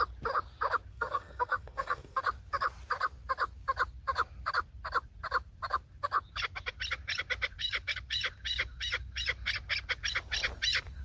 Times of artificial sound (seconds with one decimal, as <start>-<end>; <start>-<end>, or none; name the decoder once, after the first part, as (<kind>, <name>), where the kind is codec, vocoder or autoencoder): 0.9-2.2 (codec, SNAC)